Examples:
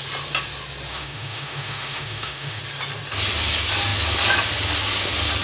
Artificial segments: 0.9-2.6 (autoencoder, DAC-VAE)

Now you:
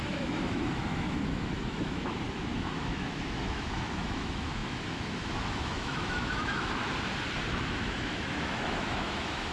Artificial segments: 0.0-6.8 (autoencoder, DAC-VAE); 7.6-9.5

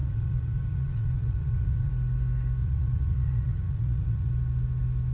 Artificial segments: 0.0-1.9 (vocoder, Vocos); 2.6-4.3

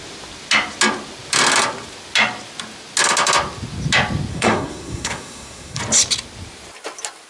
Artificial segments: 4.3-5.8 (codec, SNAC)